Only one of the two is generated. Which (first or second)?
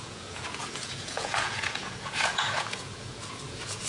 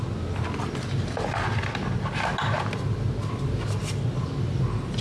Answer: first